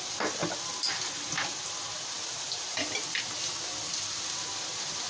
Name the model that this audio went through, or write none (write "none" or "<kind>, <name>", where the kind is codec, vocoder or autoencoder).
none